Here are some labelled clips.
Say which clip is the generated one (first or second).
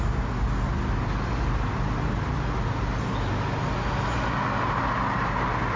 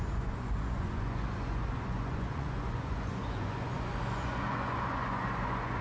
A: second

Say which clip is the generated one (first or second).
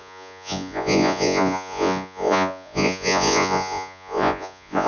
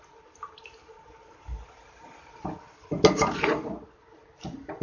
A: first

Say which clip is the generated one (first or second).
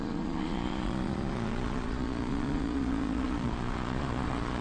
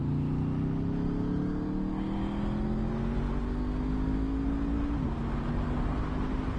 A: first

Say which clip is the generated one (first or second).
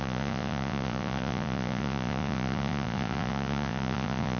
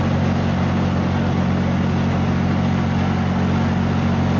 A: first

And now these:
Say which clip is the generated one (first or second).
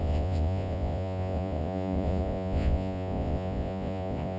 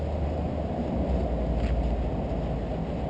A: first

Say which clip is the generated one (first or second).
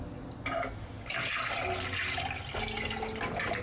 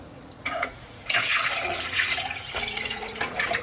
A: second